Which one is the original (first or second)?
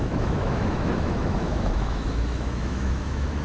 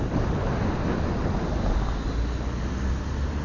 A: second